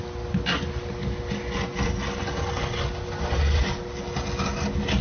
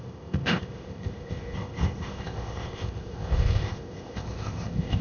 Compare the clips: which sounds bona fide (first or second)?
first